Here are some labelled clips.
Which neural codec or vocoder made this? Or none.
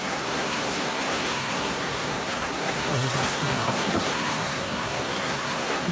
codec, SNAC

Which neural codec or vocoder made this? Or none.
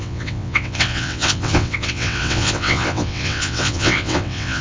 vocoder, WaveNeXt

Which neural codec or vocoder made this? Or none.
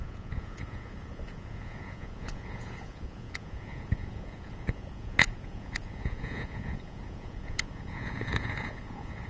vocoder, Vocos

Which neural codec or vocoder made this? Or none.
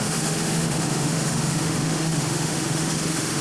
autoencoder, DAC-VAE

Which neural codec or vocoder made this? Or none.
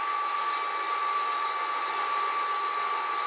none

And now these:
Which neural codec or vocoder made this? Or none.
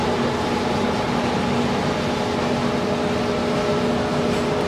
none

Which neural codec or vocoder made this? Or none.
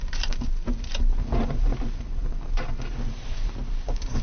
vocoder, BigVGAN v2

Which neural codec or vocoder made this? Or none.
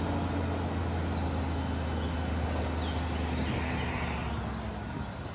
none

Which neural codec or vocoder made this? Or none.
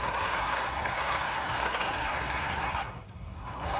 codec, SNAC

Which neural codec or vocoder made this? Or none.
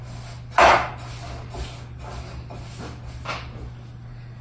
none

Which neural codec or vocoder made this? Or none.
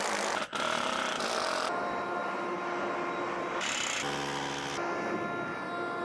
none